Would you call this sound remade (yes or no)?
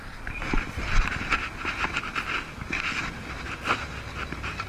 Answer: no